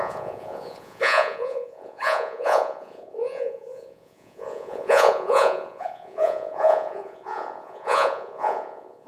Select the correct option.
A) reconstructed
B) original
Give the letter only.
A